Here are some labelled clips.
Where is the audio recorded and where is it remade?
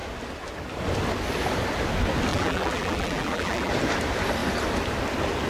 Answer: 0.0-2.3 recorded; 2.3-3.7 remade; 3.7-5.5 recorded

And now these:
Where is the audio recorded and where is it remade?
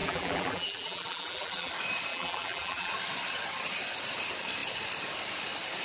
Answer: 0.0-1.7 remade; 1.7-2.1 recorded; 2.1-2.9 remade; 2.9-5.8 recorded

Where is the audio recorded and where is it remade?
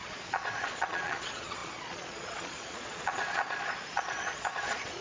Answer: 0.0-5.0 remade